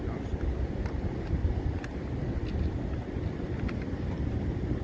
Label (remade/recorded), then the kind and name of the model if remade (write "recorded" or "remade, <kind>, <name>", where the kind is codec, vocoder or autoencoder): recorded